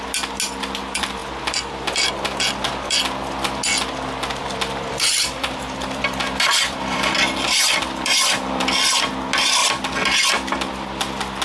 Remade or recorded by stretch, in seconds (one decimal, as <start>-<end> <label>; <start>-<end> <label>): 0.0-4.4 recorded; 4.4-9.1 remade; 9.1-11.4 recorded